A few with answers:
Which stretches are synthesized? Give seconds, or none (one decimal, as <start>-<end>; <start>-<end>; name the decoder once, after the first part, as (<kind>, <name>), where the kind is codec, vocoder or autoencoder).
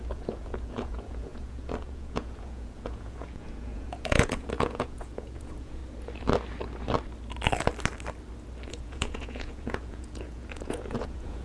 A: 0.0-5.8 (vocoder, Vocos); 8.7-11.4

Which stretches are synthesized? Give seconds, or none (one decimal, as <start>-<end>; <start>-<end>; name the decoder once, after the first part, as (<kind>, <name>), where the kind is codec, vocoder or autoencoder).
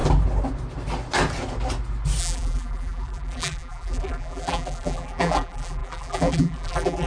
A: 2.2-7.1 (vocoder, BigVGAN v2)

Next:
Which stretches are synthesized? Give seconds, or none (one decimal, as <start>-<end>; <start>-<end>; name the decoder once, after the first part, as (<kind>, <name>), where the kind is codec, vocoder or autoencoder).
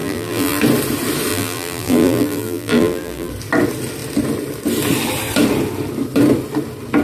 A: 0.0-0.6 (vocoder, BigVGAN v2); 1.3-3.3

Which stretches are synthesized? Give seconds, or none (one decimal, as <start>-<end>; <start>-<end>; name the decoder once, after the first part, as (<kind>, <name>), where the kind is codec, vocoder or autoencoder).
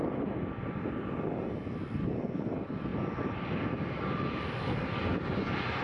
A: 2.9-4.3 (vocoder, BigVGAN v2); 5.1-5.8